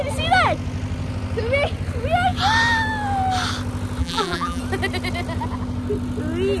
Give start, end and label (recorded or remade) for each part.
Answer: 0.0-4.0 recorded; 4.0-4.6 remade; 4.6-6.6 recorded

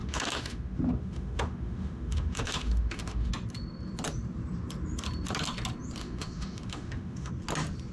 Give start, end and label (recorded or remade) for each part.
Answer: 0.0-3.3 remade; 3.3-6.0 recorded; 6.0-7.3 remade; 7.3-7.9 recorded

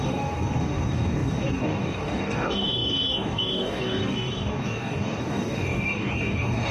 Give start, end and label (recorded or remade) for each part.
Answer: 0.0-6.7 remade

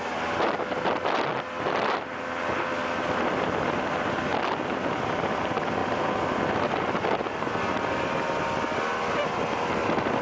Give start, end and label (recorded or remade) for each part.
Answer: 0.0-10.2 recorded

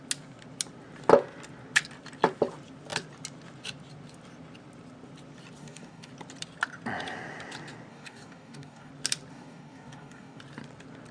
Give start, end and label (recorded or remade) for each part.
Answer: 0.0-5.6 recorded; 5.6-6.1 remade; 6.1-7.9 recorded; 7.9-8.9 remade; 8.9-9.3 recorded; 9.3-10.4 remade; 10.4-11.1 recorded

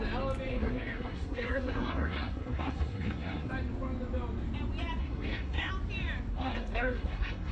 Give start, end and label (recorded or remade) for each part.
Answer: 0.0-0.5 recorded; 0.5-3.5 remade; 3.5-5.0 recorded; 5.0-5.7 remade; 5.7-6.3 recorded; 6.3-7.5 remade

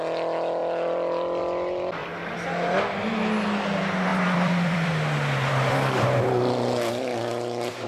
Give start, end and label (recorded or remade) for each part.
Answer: 0.0-0.6 recorded; 0.6-1.4 remade; 1.4-4.1 recorded; 4.1-4.9 remade; 4.9-7.9 recorded

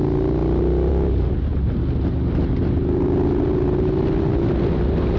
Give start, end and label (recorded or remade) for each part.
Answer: 0.0-5.2 recorded